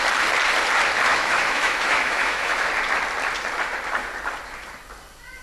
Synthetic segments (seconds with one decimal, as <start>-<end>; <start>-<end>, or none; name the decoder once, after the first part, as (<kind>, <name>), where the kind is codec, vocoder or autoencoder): 1.1-2.7 (autoencoder, DAC-VAE)